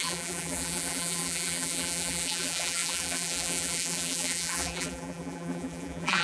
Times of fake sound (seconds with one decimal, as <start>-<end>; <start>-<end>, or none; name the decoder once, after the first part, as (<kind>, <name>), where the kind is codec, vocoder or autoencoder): 0.0-6.2 (vocoder, BigVGAN v2)